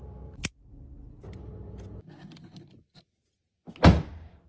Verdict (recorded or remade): recorded